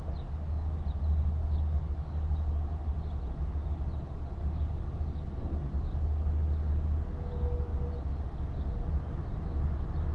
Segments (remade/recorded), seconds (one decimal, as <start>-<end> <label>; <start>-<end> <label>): 0.0-1.4 recorded; 1.4-2.5 remade; 2.5-4.4 recorded; 4.4-5.0 remade; 5.0-10.1 recorded